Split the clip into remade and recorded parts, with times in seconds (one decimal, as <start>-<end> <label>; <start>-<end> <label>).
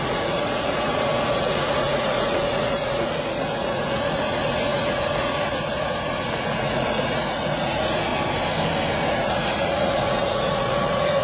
0.0-8.1 remade; 8.1-9.1 recorded; 9.1-11.2 remade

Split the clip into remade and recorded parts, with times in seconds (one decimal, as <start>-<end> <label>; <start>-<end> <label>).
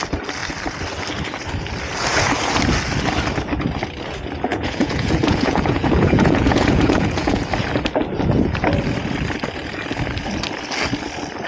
0.0-4.5 recorded; 4.5-7.4 remade; 7.4-11.5 recorded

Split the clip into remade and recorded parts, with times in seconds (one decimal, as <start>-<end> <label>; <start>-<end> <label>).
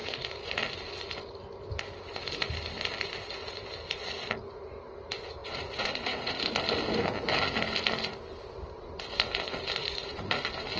0.0-0.6 remade; 0.6-5.4 recorded; 5.4-6.3 remade; 6.3-9.8 recorded; 9.8-10.4 remade; 10.4-10.8 recorded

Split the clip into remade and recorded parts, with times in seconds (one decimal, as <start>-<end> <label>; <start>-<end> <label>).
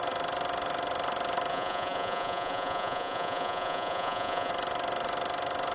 0.0-1.5 recorded; 1.5-4.5 remade; 4.5-5.7 recorded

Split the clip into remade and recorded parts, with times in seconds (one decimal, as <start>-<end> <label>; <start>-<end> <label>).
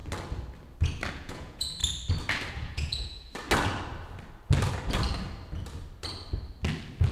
0.0-1.1 recorded; 1.1-1.8 remade; 1.8-2.5 recorded; 2.5-3.3 remade; 3.3-7.1 recorded